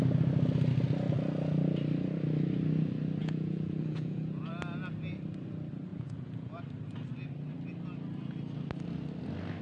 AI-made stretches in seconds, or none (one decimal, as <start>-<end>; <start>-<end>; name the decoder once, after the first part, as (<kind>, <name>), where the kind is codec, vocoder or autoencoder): 3.2-4.5 (vocoder, Vocos); 5.9-6.6